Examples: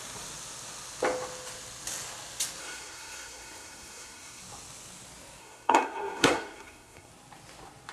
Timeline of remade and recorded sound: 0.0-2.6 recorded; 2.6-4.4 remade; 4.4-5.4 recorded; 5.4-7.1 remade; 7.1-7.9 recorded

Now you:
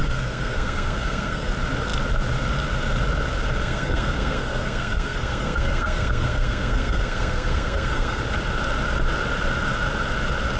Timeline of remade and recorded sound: 0.0-1.5 remade; 1.5-3.6 recorded; 3.6-8.2 remade; 8.2-10.6 recorded

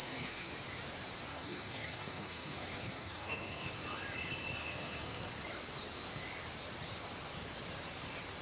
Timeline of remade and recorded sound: 0.0-0.5 remade; 0.5-1.3 recorded; 1.3-3.7 remade; 3.7-4.6 recorded; 4.6-5.3 remade; 5.3-8.4 recorded

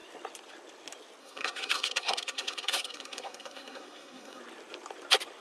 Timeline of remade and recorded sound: 0.0-1.2 recorded; 1.2-4.4 remade; 4.4-5.4 recorded